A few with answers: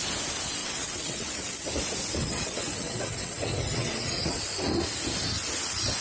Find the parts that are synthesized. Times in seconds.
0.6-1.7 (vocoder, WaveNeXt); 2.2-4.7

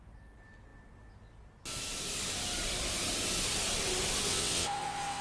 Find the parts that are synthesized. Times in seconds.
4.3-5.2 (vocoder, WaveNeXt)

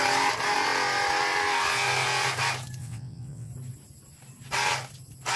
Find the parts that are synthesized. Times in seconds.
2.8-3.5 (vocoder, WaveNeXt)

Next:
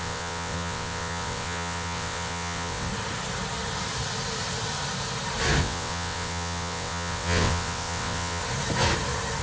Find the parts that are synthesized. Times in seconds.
0.0-2.9 (vocoder, WaveNeXt); 5.6-8.4